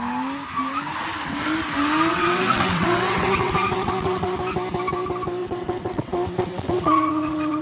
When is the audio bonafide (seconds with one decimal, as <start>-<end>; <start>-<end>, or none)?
0.0-2.1; 4.4-5.4